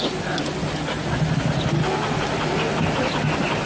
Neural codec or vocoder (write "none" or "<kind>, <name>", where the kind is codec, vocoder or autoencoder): none